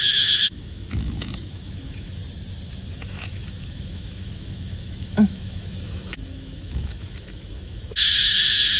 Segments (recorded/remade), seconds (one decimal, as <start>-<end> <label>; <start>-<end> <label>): 0.0-2.2 remade; 2.2-2.9 recorded; 2.9-8.8 remade